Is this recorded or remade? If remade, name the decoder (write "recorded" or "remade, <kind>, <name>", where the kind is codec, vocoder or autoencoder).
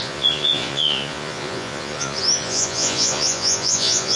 remade, vocoder, Vocos